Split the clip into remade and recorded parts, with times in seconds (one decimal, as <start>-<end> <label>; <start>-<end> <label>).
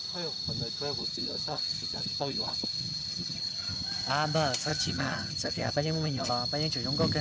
0.0-1.0 recorded; 1.0-3.7 remade; 3.7-4.7 recorded; 4.7-6.3 remade; 6.3-7.2 recorded